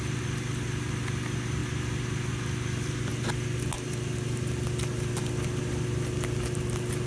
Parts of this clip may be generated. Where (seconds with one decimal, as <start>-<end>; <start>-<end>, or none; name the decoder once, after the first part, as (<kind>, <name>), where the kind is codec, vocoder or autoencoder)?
none